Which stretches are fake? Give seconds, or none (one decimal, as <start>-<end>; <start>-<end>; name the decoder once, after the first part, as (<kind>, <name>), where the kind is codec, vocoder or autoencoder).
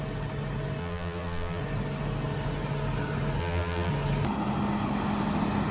0.8-1.6 (vocoder, BigVGAN v2); 3.4-3.9